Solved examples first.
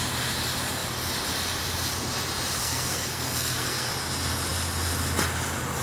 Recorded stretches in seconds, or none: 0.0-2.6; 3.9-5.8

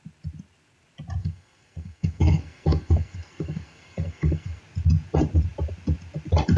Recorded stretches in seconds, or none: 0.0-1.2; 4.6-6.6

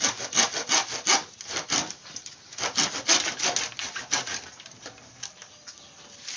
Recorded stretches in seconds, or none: 0.0-6.4